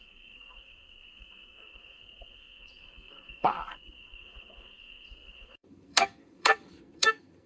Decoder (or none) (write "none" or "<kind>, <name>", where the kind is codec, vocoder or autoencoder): codec, SNAC